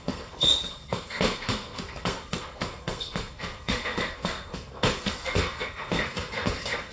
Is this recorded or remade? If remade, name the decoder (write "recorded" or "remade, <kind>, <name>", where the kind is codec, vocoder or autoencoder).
remade, codec, SNAC